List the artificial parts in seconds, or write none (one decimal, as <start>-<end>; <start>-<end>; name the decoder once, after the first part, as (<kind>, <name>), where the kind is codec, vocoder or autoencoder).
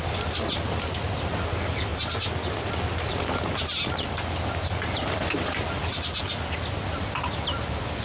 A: none